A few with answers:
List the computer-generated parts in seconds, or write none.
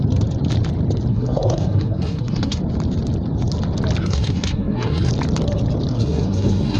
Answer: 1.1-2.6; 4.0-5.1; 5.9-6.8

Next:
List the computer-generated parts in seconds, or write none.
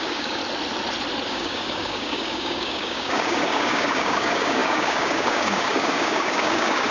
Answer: 0.0-0.4; 1.3-6.9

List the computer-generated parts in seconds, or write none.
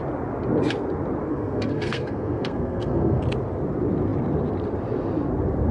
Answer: 1.3-3.2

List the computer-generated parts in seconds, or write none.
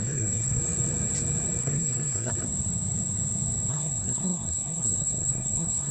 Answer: 0.0-0.6; 1.6-2.3; 3.7-5.9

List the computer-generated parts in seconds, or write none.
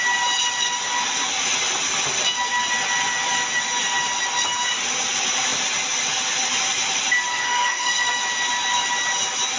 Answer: 7.3-8.2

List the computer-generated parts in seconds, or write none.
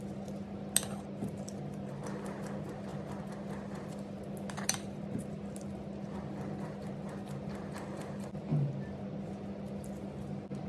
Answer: none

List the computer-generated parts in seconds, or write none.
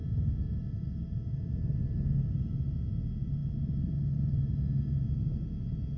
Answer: none